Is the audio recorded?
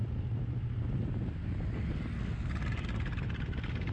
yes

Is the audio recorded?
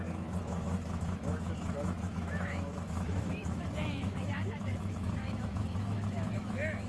no